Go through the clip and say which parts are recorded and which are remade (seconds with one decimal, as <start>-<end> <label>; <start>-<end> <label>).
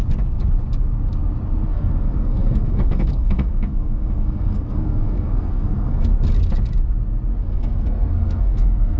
0.0-1.7 recorded; 1.7-6.1 remade; 6.1-7.4 recorded; 7.4-9.0 remade